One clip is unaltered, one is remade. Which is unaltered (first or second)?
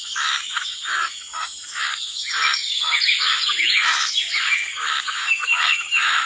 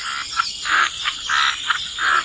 second